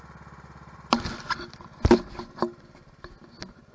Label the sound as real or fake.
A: real